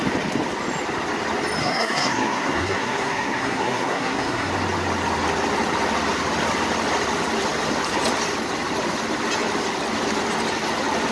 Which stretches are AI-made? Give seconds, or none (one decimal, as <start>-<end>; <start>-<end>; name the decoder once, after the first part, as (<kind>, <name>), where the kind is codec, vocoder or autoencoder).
1.6-4.5 (codec, SNAC)